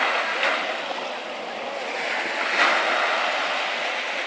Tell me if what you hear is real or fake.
real